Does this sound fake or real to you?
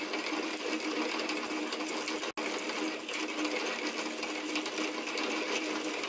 real